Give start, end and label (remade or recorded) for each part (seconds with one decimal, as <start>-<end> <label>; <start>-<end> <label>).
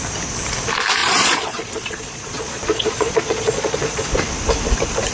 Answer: 0.0-1.0 recorded; 1.0-4.1 remade; 4.1-5.1 recorded